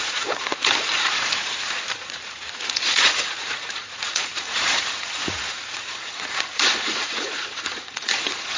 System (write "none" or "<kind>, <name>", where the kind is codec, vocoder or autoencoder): vocoder, Vocos